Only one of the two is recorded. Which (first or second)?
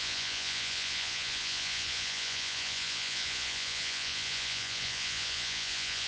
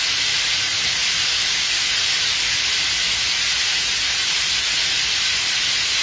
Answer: second